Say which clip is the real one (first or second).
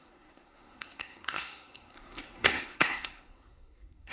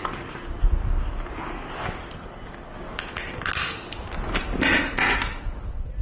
second